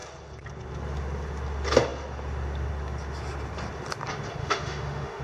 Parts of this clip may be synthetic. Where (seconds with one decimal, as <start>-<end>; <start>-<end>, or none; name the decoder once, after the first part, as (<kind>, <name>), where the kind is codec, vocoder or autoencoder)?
4.4-5.2 (autoencoder, DAC-VAE)